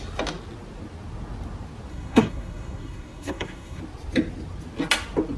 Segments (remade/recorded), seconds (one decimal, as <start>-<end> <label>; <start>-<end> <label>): 0.0-1.9 recorded; 1.9-3.8 remade; 3.8-5.4 recorded